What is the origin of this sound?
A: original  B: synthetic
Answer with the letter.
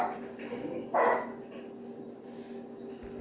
A